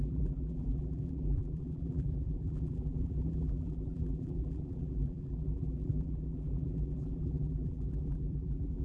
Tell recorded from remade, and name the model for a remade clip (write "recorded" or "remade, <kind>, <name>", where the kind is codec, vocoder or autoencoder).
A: remade, vocoder, BigVGAN v2